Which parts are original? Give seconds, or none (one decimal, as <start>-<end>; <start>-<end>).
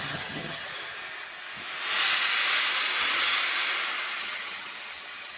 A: 0.7-3.0; 3.4-4.2